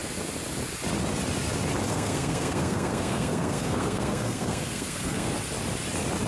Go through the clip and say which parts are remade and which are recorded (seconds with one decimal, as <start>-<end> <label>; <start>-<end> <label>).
0.0-1.9 recorded; 1.9-5.3 remade; 5.3-6.3 recorded